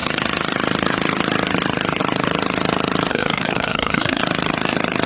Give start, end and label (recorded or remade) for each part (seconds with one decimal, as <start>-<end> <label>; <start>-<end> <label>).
0.0-3.1 recorded; 3.1-4.2 remade; 4.2-5.1 recorded